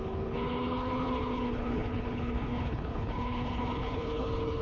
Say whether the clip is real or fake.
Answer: fake